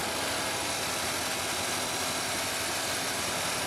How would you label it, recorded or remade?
recorded